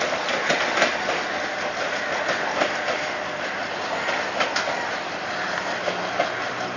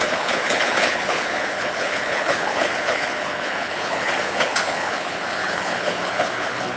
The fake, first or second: second